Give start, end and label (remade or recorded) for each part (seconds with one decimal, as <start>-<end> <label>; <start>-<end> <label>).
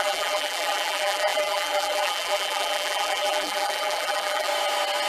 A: 0.0-4.5 remade; 4.5-5.1 recorded